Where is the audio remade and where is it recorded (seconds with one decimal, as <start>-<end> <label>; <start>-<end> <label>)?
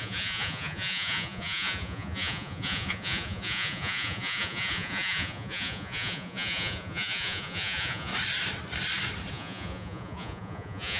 0.0-8.1 remade; 8.1-9.3 recorded; 9.3-11.0 remade